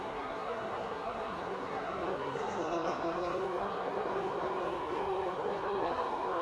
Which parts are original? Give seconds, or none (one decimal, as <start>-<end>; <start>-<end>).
none